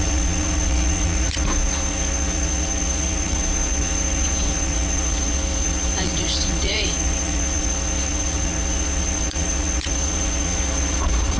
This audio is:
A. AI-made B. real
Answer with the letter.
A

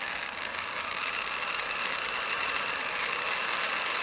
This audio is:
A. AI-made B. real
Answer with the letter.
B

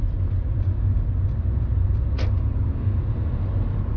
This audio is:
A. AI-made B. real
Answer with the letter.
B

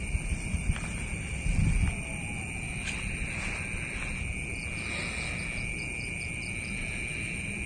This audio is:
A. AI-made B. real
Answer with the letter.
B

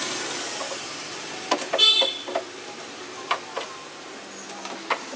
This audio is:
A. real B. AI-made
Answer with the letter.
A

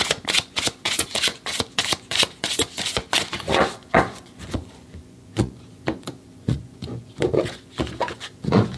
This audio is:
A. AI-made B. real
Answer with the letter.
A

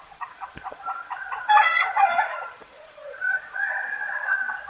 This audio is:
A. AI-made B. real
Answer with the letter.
A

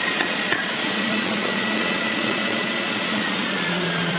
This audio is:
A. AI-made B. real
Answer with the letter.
A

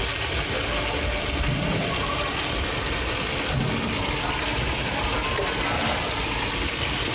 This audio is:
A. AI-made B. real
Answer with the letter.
B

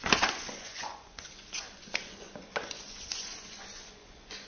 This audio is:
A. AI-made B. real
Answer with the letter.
A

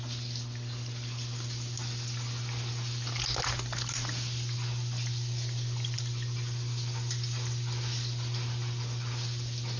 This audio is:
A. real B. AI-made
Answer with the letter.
A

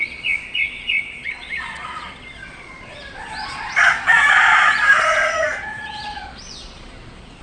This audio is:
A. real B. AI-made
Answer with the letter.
B